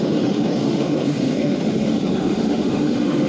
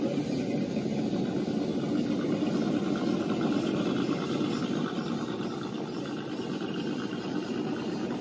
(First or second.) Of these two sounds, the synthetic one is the first